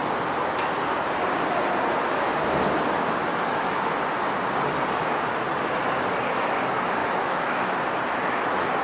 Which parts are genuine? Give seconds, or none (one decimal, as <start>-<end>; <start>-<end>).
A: 0.0-3.2; 3.9-7.0; 7.8-8.8